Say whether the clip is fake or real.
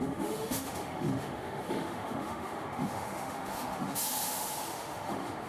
fake